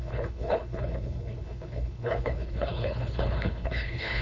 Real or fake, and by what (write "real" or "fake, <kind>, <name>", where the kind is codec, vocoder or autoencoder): fake, codec, HILCodec